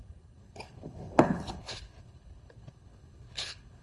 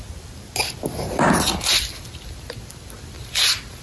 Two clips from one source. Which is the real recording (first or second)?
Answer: second